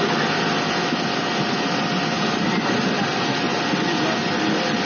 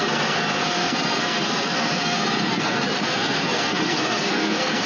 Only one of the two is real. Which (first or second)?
first